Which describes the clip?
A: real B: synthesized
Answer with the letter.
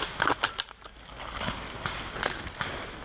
A